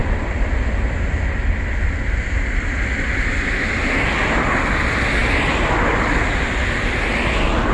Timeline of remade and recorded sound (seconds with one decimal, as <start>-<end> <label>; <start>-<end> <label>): 0.0-7.7 recorded